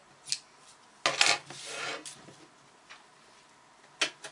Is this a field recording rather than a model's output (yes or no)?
yes